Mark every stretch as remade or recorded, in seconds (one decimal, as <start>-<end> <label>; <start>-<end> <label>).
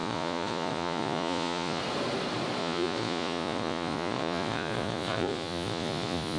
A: 0.0-1.8 remade; 1.8-2.6 recorded; 2.6-6.4 remade